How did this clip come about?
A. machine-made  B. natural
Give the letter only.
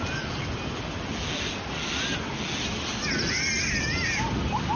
B